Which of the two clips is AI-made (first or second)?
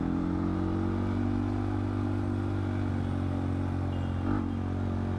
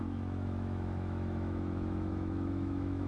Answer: second